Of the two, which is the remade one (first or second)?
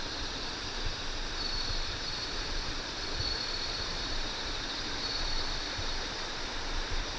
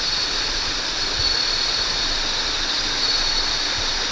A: first